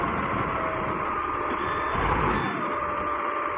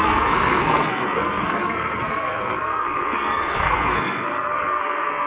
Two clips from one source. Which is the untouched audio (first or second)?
first